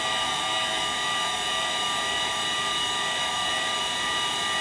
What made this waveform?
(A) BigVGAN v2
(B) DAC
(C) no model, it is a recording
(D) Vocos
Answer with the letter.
A